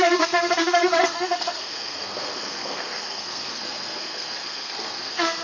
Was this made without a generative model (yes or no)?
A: no